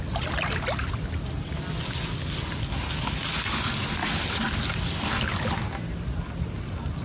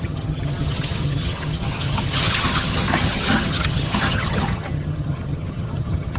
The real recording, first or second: first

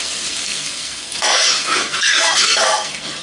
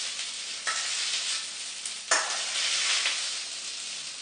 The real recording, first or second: second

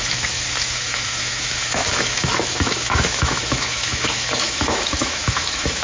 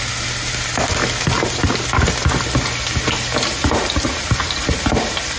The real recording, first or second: second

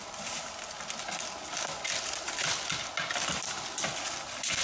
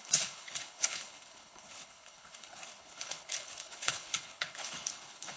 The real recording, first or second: first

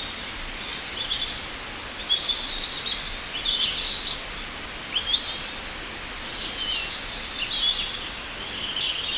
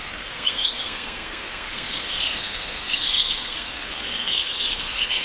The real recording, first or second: first